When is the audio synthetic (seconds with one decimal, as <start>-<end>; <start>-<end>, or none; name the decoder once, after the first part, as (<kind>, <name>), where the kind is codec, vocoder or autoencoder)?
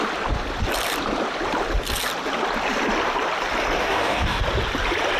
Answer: 3.8-4.4 (codec, DAC)